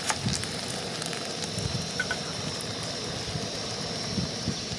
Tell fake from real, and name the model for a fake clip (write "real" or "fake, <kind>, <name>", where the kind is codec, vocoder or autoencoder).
real